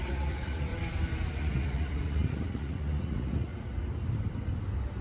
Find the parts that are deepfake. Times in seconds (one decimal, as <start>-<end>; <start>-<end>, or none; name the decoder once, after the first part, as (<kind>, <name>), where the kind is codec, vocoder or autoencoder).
0.0-0.7 (vocoder, Vocos); 1.3-3.5